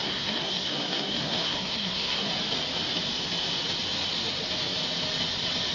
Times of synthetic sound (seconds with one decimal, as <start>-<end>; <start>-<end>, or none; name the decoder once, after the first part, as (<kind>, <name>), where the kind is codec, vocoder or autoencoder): 0.0-2.3 (codec, SNAC)